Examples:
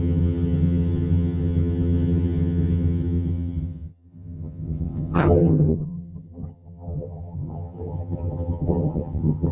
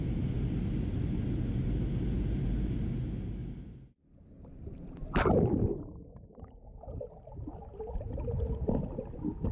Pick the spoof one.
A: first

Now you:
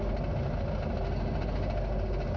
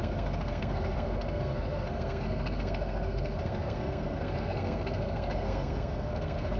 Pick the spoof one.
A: second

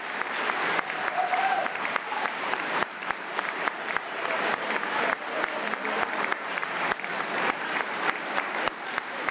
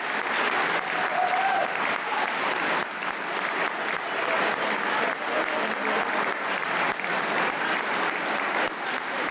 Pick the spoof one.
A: first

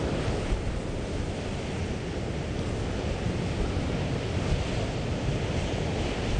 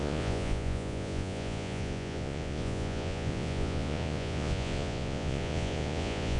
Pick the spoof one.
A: second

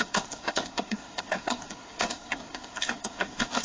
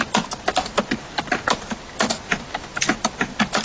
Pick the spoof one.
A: first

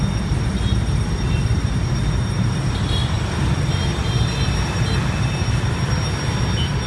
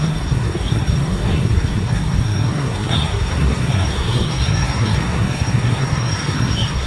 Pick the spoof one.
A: second